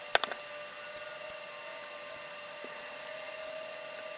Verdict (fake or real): real